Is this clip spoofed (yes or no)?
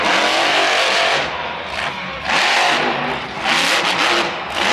no